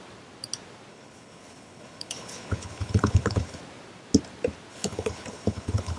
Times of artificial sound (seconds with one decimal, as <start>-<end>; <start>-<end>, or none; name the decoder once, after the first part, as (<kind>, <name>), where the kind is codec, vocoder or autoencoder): 0.9-3.6 (codec, HILCodec); 4.7-6.0